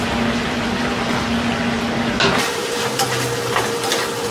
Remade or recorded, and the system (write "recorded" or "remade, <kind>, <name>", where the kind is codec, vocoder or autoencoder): recorded